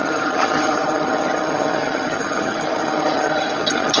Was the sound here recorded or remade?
remade